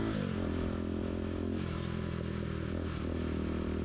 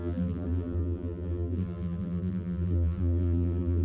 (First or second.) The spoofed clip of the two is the second